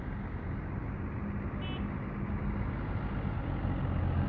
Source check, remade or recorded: recorded